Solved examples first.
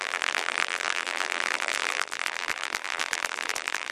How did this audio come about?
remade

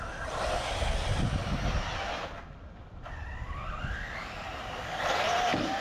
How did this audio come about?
recorded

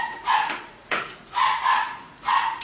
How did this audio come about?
remade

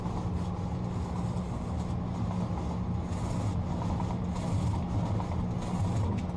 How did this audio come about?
recorded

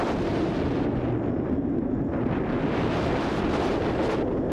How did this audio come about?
recorded